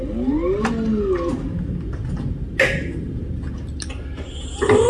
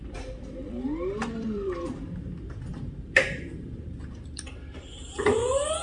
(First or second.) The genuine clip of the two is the first